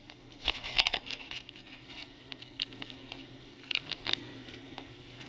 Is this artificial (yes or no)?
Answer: yes